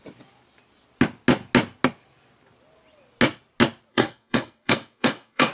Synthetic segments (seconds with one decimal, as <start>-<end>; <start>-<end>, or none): 3.9-5.5

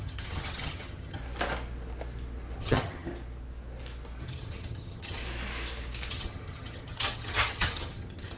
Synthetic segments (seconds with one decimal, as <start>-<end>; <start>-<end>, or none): 0.0-1.2; 2.6-3.1; 4.2-5.2; 6.1-8.4

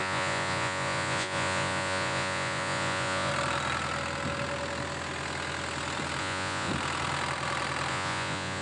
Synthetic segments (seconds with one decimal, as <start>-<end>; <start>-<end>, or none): 0.0-3.3; 6.2-6.7; 7.9-8.6

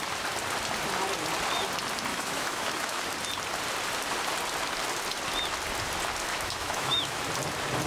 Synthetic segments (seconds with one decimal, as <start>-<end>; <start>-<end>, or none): 2.1-3.0; 6.3-7.2

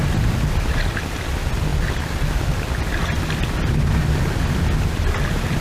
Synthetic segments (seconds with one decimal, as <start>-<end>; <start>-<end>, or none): none

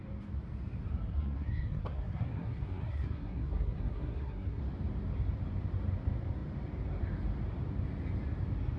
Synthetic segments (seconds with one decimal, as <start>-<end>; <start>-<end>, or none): 1.1-4.6

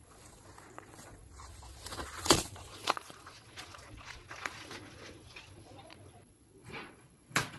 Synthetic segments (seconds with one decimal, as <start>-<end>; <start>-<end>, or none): 0.0-7.6